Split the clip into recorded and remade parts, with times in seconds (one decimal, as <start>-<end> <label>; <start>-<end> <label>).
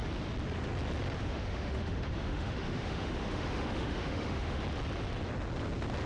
0.0-1.2 recorded; 1.2-4.6 remade; 4.6-6.1 recorded